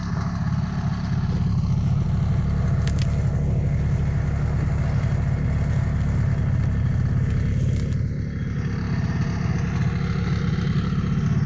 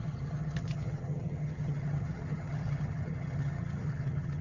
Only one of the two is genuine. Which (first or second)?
first